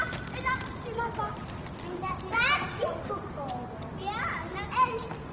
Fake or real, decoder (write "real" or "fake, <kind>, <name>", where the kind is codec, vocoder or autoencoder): real